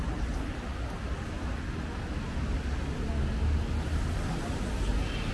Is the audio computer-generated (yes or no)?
no